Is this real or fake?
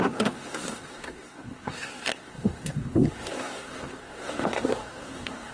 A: fake